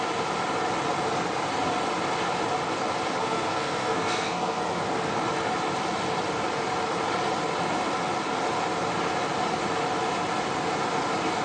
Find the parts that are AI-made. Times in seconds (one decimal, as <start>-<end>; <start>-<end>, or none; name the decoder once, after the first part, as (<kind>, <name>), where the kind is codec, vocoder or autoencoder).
3.2-4.6 (codec, SNAC)